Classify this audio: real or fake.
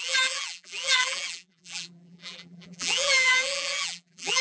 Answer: fake